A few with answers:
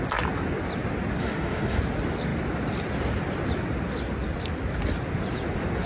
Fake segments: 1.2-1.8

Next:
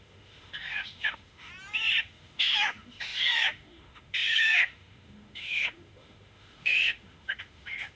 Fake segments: 0.0-1.5; 2.0-8.0

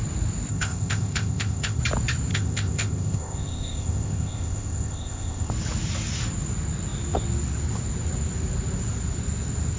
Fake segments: 0.5-1.8; 2.3-5.5

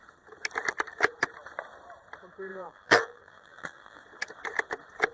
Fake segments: 2.5-4.0